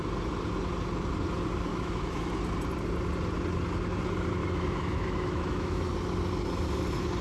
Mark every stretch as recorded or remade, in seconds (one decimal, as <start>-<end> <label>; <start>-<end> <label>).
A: 0.0-1.7 recorded; 1.7-2.3 remade; 2.3-4.4 recorded; 4.4-5.8 remade; 5.8-7.2 recorded